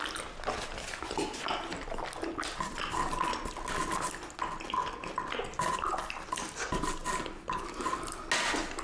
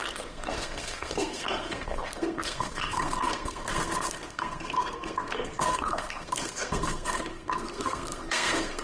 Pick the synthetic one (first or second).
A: second